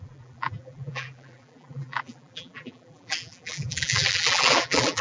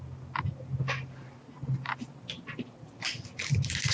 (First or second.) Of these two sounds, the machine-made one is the first